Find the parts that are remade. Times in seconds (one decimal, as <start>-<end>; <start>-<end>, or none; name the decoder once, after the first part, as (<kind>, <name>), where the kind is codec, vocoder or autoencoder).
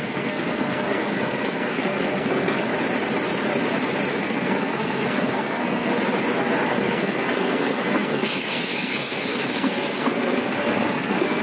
0.0-2.7 (codec, SNAC); 4.1-5.9; 6.7-11.4